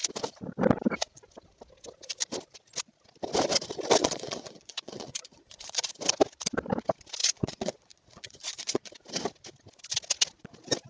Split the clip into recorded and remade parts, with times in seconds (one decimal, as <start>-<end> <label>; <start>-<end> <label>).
0.0-4.0 recorded; 4.0-5.9 remade; 5.9-7.2 recorded; 7.2-8.9 remade; 8.9-10.9 recorded